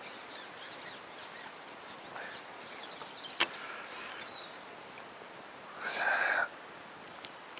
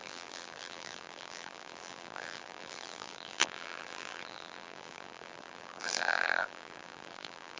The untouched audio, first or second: first